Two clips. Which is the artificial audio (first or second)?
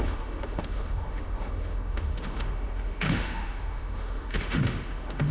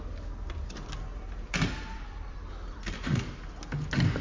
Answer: first